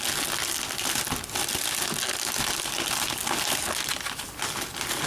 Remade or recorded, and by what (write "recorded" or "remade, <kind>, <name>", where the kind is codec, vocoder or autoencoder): recorded